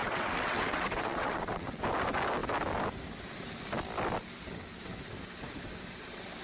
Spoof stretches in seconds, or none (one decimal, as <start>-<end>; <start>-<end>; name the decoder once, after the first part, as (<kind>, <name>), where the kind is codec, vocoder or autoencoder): 0.0-1.8 (vocoder, WaveNeXt)